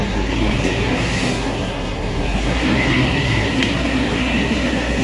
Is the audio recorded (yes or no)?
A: no